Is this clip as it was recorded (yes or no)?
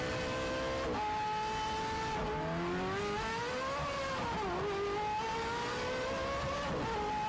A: yes